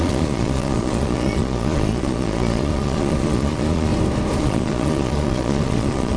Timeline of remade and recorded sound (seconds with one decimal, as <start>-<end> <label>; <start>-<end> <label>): 0.0-3.9 remade; 3.9-4.4 recorded; 4.4-6.2 remade